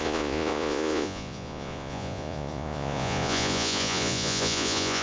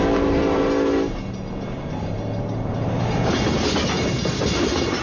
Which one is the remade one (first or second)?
first